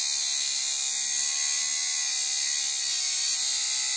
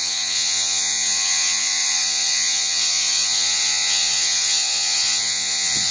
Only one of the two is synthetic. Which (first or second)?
second